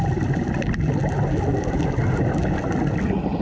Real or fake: real